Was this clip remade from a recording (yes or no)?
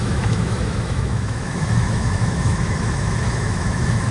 yes